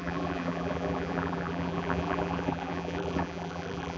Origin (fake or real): fake